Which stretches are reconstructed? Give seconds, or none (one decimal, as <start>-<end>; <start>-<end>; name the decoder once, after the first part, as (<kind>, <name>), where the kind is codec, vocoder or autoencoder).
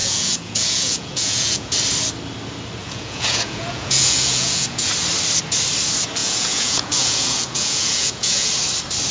0.0-1.7 (vocoder, Vocos); 2.8-4.9; 6.2-8.5